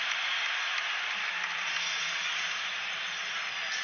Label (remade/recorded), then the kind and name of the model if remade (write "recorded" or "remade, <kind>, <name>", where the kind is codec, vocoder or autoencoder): recorded